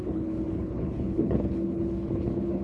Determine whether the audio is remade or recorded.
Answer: remade